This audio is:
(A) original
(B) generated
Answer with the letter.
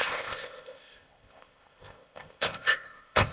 B